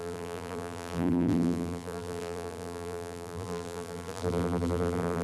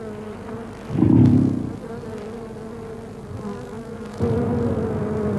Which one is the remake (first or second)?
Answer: first